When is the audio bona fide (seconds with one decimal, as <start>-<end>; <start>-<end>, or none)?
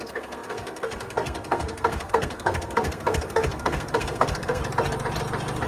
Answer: 4.6-5.7